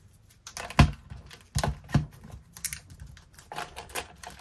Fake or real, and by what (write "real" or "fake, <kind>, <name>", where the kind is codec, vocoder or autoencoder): real